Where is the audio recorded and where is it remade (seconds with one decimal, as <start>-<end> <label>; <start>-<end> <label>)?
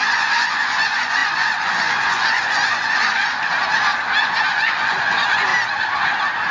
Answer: 0.0-3.5 remade; 3.5-4.2 recorded; 4.2-5.5 remade; 5.5-6.5 recorded